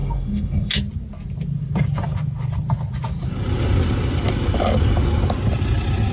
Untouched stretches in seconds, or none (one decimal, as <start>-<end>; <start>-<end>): 0.7-6.1